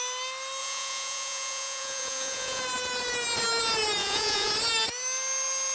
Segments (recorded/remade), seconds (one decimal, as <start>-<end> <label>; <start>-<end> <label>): 0.0-0.6 recorded; 0.6-2.6 remade; 2.6-4.0 recorded; 4.0-4.5 remade; 4.5-5.7 recorded